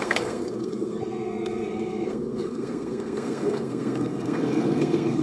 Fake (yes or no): yes